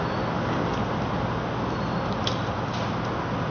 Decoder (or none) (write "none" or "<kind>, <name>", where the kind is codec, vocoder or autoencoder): none